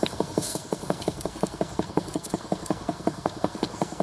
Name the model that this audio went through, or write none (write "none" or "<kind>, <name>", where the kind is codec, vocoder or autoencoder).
codec, SNAC